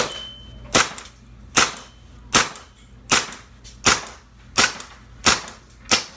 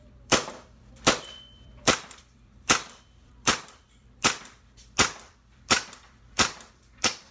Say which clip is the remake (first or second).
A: second